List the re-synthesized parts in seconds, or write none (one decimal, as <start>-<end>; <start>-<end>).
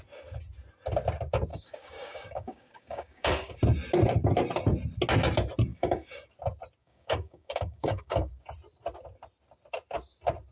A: 1.5-3.6; 5.7-6.3; 6.8-8.3